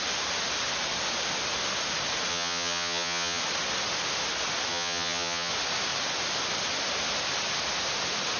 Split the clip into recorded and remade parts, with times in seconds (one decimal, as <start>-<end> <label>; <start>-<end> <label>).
0.0-2.3 recorded; 2.3-3.4 remade; 3.4-4.7 recorded; 4.7-5.5 remade; 5.5-8.4 recorded